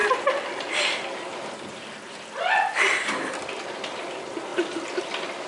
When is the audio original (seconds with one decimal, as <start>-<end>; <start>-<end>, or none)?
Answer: 4.5-5.0